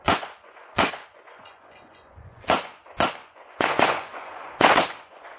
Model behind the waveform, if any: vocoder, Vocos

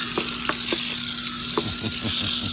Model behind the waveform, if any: none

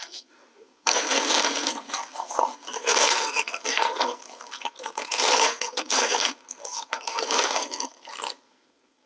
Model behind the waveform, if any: codec, SNAC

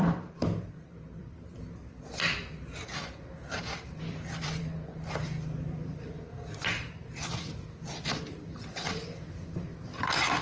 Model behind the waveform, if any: vocoder, BigVGAN v2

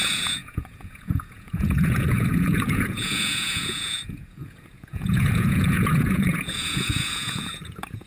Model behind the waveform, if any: vocoder, Vocos